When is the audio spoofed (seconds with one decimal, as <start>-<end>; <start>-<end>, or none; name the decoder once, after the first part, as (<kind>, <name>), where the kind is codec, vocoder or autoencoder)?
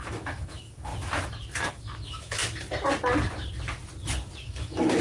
0.0-0.9 (autoencoder, DAC-VAE); 1.7-2.4; 4.4-5.0